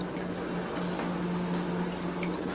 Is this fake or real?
real